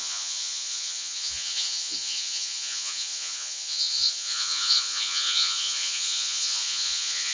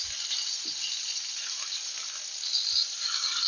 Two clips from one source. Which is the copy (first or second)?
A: first